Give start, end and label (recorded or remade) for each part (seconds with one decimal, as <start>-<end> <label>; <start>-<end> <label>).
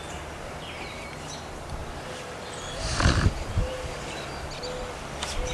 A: 0.0-5.5 recorded